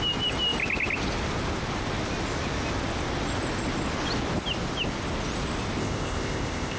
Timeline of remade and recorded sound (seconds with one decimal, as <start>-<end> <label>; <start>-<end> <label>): 0.0-5.8 recorded; 5.8-6.8 remade